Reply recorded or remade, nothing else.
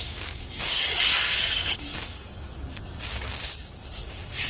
remade